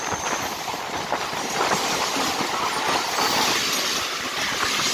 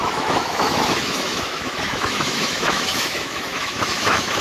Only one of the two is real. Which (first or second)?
first